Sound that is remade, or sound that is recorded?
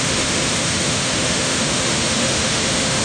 remade